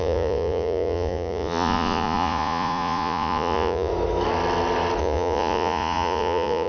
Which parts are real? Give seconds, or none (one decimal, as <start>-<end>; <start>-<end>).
3.9-5.0